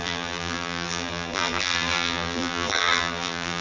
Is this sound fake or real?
fake